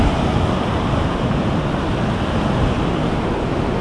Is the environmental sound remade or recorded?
recorded